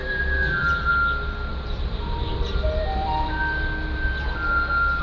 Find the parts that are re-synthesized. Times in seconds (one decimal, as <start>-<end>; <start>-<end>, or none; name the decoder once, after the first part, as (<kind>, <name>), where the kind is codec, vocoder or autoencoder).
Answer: 0.0-0.9 (vocoder, BigVGAN v2); 1.5-3.4